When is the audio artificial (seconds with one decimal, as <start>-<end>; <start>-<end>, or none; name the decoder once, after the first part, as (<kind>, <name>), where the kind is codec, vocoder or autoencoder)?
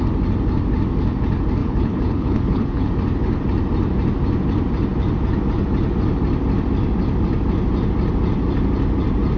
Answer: 1.6-2.9 (codec, HILCodec)